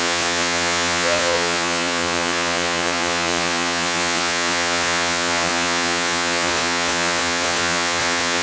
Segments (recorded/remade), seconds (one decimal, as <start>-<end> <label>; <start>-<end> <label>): 0.0-8.4 remade